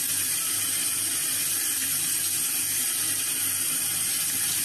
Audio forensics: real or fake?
real